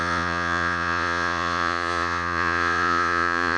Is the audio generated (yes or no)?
yes